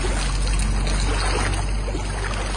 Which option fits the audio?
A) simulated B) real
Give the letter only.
B